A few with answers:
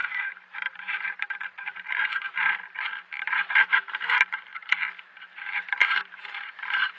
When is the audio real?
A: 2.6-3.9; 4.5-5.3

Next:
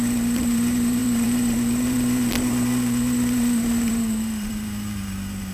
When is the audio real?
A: none

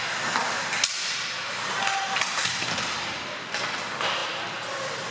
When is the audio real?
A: 0.0-0.4; 3.5-5.1

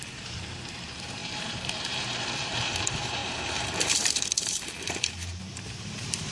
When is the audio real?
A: none